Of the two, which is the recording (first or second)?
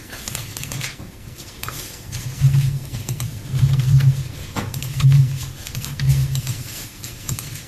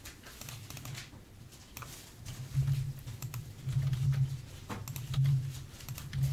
second